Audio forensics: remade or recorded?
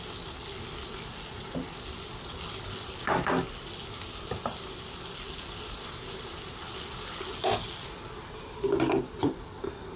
recorded